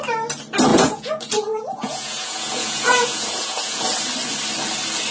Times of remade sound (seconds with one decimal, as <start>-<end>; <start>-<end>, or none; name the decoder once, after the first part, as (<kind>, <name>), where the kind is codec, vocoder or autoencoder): 0.7-3.8 (vocoder, Vocos)